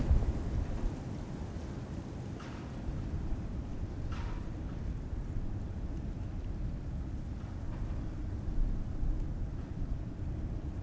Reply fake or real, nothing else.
real